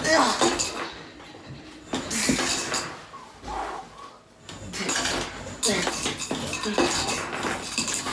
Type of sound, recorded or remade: recorded